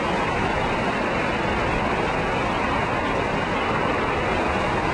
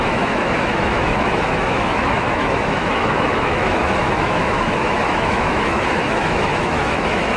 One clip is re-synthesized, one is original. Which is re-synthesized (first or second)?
second